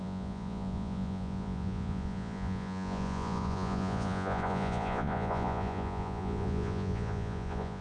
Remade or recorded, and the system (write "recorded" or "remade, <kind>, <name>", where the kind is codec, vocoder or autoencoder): remade, vocoder, Vocos